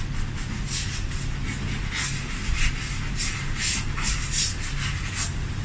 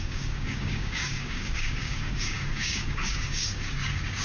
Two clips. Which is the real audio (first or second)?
first